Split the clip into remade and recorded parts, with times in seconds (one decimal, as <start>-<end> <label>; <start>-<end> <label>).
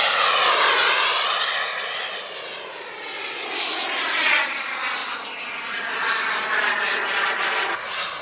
0.0-8.2 recorded